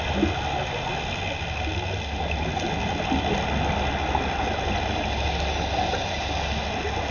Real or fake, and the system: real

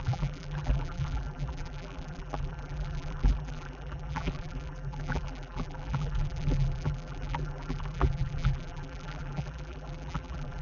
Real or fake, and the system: fake, vocoder, BigVGAN v2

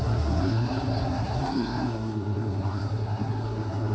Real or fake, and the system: fake, codec, SNAC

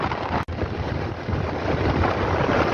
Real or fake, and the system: real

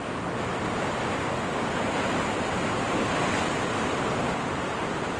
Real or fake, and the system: real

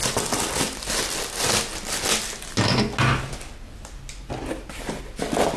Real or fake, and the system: real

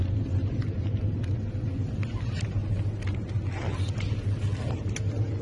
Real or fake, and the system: real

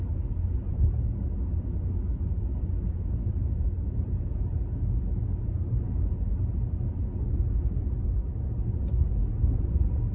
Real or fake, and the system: real